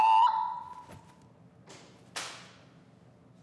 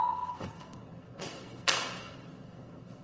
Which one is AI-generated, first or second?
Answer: second